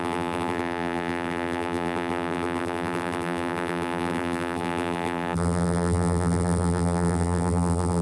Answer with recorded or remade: remade